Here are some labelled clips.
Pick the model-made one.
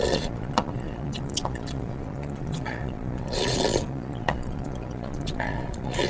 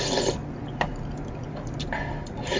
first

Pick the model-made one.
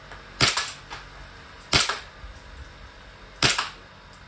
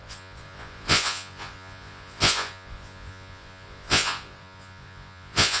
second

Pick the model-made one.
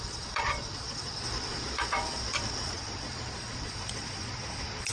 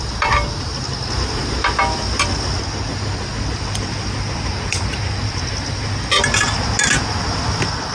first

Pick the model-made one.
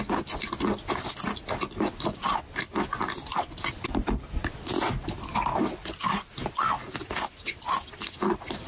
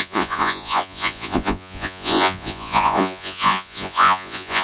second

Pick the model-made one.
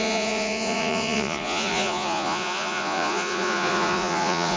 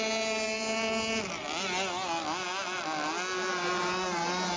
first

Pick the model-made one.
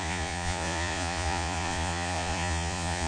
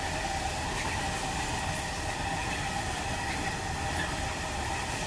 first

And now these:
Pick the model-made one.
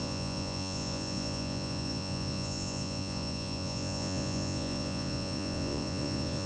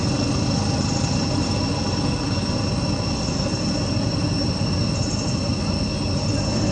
first